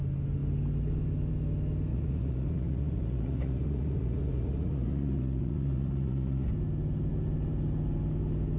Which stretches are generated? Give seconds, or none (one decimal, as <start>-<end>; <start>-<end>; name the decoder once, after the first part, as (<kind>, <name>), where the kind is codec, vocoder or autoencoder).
1.9-6.5 (vocoder, Vocos)